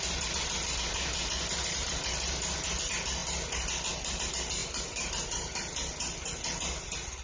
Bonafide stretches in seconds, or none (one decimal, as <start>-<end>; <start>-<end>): 0.0-7.2